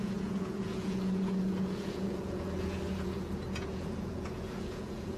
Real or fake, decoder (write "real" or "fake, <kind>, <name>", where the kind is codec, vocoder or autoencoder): fake, vocoder, Vocos